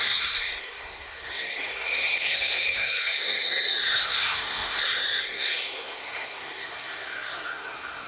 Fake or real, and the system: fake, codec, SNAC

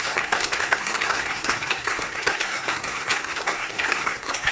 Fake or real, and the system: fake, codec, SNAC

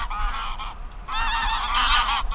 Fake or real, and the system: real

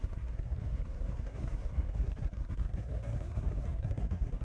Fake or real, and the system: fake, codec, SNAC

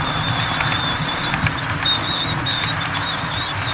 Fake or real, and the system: real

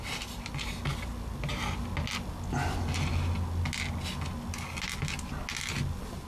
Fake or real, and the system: real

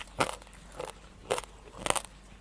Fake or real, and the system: real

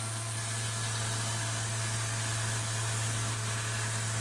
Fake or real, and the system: real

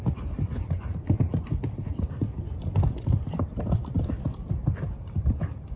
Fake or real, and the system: real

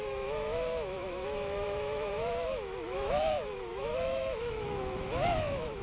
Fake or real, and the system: fake, autoencoder, DAC-VAE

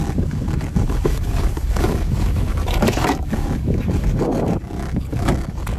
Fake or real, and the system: fake, codec, DAC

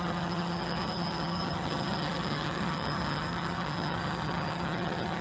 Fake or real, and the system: fake, vocoder, HiFi-GAN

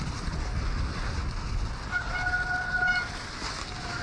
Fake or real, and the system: real